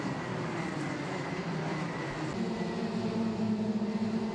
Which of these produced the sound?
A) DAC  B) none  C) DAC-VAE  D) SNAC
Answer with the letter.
B